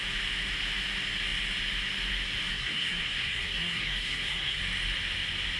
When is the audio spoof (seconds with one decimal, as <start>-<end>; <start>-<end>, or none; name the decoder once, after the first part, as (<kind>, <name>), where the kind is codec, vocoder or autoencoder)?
2.5-4.6 (codec, SNAC)